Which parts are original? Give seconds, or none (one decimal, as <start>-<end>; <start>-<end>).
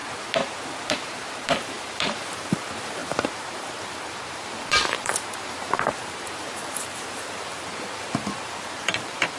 0.0-0.9